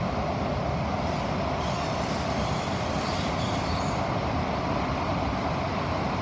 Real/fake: real